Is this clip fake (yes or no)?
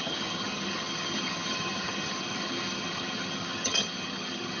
yes